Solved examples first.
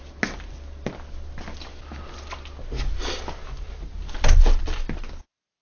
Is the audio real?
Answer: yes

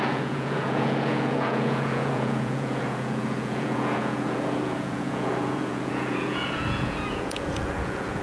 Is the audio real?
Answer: no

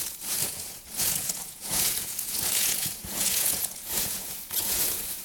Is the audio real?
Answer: no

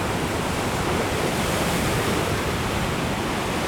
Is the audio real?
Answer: yes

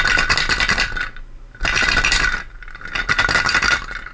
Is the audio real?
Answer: yes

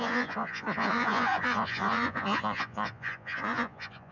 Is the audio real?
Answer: no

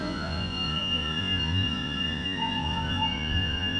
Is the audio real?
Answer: no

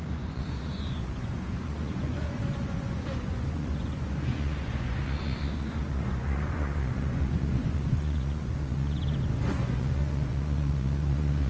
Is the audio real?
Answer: no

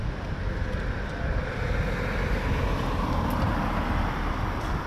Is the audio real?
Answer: yes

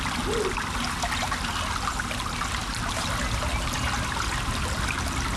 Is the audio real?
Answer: yes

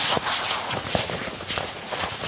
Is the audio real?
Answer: no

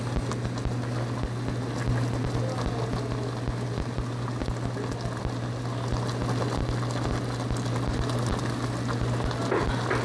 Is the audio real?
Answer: yes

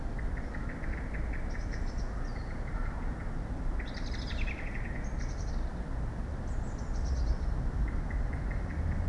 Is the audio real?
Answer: yes